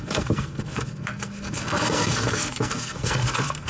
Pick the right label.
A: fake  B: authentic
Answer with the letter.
A